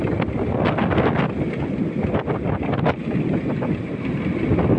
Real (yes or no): yes